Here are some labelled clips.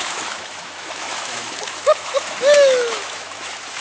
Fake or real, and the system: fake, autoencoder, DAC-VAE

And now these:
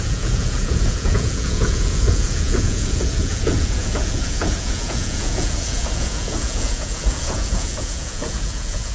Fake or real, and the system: fake, vocoder, Vocos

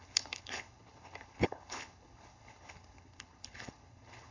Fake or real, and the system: fake, codec, HILCodec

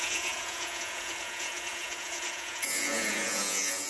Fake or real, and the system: fake, vocoder, Vocos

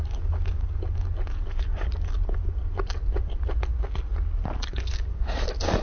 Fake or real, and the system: real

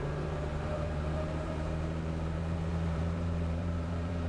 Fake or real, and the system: fake, vocoder, BigVGAN v2